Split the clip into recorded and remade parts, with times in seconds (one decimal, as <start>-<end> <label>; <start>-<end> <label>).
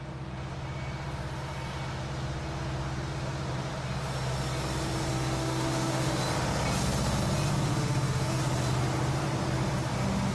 0.0-5.1 recorded; 5.1-6.2 remade; 6.2-7.7 recorded; 7.7-8.4 remade; 8.4-10.3 recorded